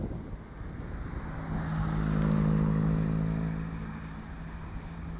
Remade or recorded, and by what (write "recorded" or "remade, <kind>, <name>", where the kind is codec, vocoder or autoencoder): recorded